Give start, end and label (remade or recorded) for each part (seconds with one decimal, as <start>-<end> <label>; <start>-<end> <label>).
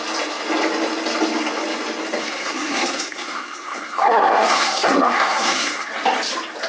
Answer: 0.0-2.2 recorded; 2.2-5.9 remade; 5.9-6.7 recorded